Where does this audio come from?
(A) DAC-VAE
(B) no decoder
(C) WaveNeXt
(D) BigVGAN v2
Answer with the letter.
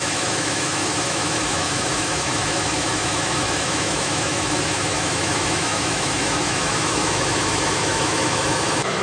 A